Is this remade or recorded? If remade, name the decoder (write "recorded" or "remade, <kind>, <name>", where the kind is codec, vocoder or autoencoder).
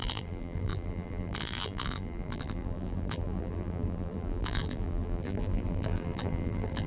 remade, vocoder, BigVGAN v2